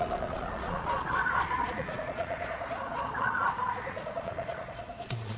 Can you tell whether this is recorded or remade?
remade